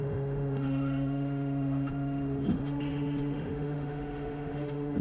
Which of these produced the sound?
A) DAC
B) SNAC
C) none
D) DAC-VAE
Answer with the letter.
D